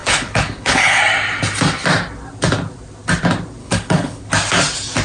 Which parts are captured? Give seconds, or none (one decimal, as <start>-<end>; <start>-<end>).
1.0-3.6; 4.2-5.0